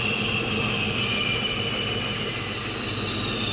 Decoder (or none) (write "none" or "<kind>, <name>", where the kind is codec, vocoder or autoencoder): none